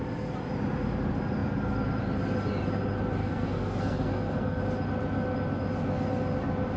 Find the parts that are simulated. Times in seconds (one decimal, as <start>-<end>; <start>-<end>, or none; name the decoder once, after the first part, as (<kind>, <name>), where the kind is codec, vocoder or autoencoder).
3.2-4.6 (codec, SNAC)